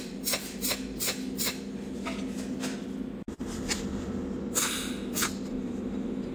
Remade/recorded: recorded